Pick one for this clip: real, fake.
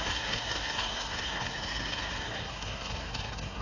fake